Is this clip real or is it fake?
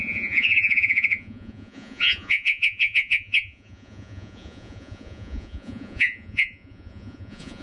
fake